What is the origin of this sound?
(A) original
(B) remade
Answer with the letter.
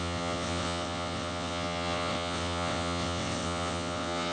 B